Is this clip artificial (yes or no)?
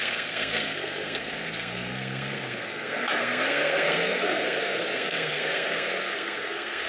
yes